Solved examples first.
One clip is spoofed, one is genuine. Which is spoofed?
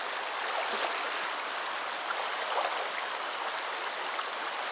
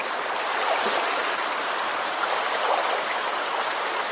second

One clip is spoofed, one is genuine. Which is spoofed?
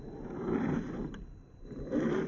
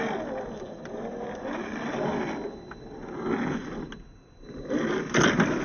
first